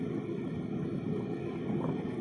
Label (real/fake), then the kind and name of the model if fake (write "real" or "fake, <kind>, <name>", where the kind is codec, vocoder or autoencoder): real